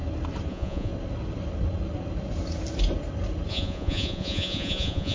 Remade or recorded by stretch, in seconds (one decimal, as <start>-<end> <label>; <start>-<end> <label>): 0.0-0.5 recorded; 0.5-0.9 remade; 0.9-3.5 recorded; 3.5-5.1 remade

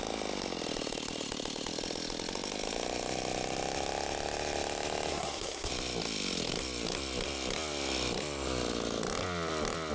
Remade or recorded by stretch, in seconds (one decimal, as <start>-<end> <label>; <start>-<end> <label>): 0.0-5.1 recorded; 5.1-5.7 remade; 5.7-9.9 recorded

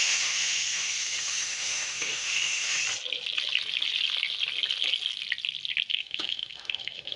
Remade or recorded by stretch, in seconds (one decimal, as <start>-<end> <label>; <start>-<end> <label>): 0.0-2.8 remade; 2.8-5.9 recorded; 5.9-7.2 remade

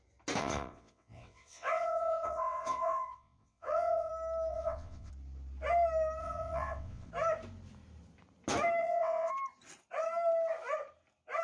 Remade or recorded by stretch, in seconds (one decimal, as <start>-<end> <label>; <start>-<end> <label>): 0.0-0.4 recorded; 0.4-4.1 remade; 4.1-4.5 recorded; 4.5-5.1 remade; 5.1-6.2 recorded; 6.2-7.1 remade; 7.1-8.8 recorded; 8.8-9.3 remade; 9.3-11.4 recorded

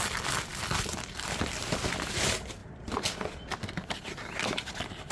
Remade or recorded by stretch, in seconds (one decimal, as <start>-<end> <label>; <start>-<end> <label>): 0.0-0.5 recorded; 0.5-2.1 remade; 2.1-2.6 recorded; 2.6-5.1 remade

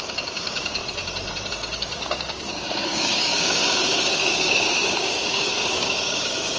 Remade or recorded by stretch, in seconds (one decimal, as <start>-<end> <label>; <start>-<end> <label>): 0.0-0.8 remade; 0.8-1.5 recorded; 1.5-6.6 remade